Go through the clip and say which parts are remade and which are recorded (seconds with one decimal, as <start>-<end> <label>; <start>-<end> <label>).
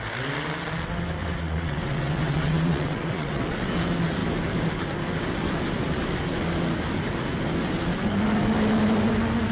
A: 0.0-1.2 recorded; 1.2-3.7 remade; 3.7-9.5 recorded